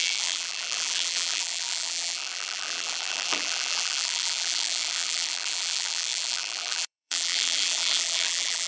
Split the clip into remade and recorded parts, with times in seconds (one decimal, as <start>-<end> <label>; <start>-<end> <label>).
0.0-8.7 remade